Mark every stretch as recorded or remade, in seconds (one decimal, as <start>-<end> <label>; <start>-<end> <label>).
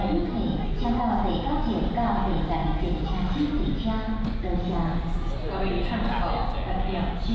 0.0-7.3 recorded